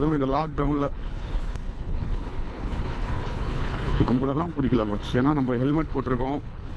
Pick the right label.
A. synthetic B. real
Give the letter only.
A